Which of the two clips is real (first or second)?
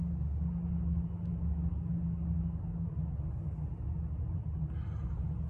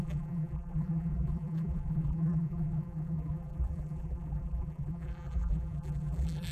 first